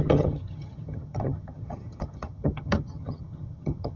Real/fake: fake